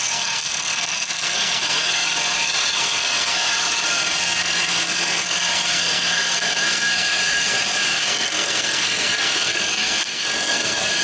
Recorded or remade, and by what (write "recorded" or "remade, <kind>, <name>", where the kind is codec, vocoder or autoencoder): remade, codec, SNAC